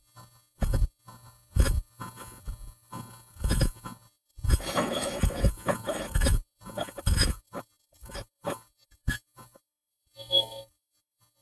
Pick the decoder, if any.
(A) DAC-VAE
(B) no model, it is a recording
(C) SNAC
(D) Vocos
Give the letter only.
A